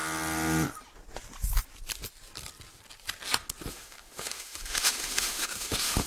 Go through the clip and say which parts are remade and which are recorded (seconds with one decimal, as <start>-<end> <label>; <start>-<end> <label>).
0.0-3.7 recorded; 3.7-6.1 remade